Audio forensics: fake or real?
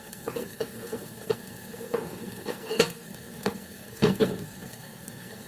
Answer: fake